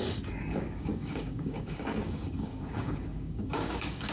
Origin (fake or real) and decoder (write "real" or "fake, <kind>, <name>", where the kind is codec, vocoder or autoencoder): fake, codec, DAC